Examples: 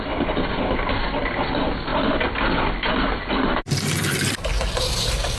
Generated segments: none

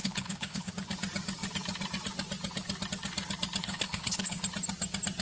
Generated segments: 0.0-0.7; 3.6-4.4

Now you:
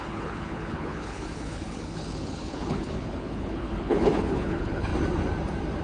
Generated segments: 0.0-4.9

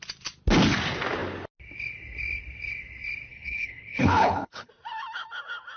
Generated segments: 3.3-4.7

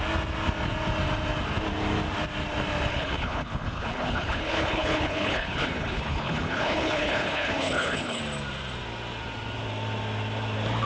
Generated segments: 2.9-8.2